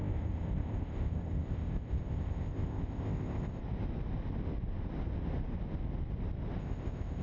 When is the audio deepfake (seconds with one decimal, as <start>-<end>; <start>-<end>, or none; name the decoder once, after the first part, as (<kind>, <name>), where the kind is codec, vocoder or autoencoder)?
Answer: 0.0-3.6 (codec, ZipCodec); 6.6-7.2